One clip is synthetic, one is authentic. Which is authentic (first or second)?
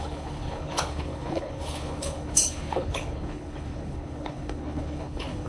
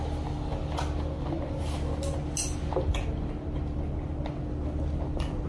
second